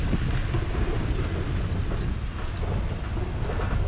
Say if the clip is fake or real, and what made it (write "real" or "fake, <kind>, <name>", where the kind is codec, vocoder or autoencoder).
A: real